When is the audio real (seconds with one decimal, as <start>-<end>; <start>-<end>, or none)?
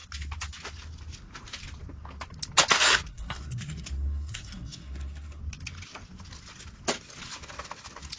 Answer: 0.0-3.1; 5.4-8.2